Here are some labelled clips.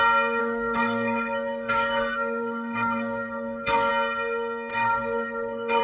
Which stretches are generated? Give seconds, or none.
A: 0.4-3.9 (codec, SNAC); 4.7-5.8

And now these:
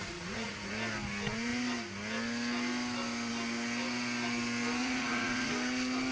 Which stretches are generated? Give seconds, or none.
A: 0.0-0.7 (vocoder, Vocos); 4.8-5.5

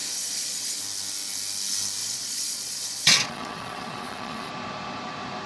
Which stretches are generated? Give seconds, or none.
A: 0.0-0.8 (vocoder, Vocos); 2.0-4.5

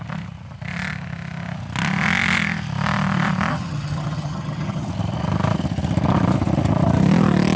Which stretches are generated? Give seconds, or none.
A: 3.5-4.9 (vocoder, HiFi-GAN)